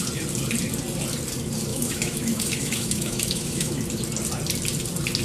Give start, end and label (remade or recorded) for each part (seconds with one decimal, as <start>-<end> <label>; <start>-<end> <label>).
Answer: 0.0-1.7 recorded; 1.7-3.8 remade; 3.8-5.2 recorded